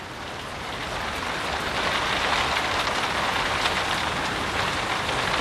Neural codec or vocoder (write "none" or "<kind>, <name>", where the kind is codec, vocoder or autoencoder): none